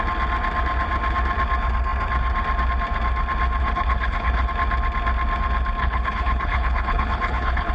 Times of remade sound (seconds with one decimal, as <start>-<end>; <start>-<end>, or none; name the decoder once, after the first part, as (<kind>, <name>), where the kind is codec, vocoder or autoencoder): 3.6-4.5 (codec, HILCodec); 5.8-7.7